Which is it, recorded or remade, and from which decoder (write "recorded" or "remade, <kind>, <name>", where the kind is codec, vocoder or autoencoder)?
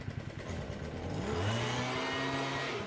recorded